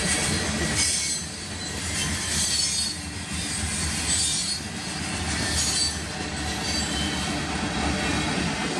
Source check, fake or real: real